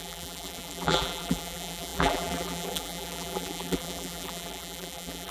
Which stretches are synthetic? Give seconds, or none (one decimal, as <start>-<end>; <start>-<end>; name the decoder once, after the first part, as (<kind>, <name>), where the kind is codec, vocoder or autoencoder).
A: 0.0-5.3 (vocoder, BigVGAN v2)